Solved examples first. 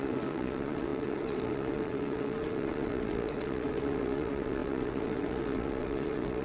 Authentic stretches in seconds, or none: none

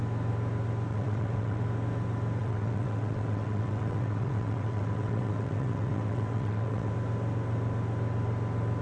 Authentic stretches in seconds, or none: 0.0-0.9; 1.6-2.4; 6.9-8.8

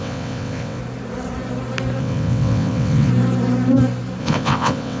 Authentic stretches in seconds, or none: 0.8-2.0; 3.1-4.2

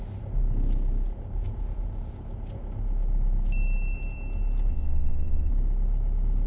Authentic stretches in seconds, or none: 0.0-4.7; 5.5-6.5